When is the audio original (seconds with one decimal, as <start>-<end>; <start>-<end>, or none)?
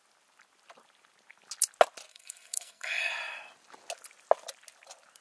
0.0-2.1; 3.1-5.2